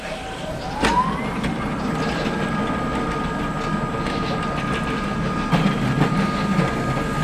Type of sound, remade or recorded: recorded